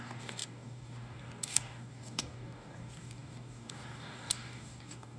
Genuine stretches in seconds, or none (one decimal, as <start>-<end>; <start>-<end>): none